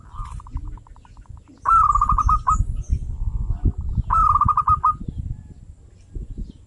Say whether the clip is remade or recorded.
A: recorded